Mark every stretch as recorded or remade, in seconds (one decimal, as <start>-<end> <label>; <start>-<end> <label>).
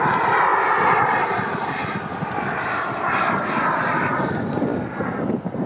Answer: 0.0-5.7 recorded